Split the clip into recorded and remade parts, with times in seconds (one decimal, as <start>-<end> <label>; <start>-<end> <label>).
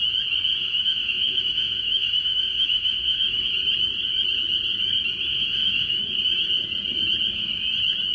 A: 0.0-0.6 recorded; 0.6-3.5 remade; 3.5-5.3 recorded; 5.3-6.0 remade; 6.0-8.1 recorded